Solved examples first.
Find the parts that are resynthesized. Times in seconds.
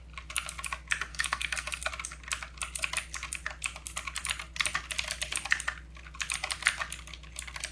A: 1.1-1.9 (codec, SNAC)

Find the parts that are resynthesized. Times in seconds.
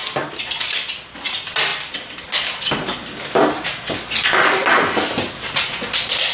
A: none